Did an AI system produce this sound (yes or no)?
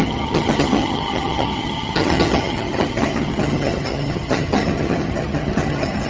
yes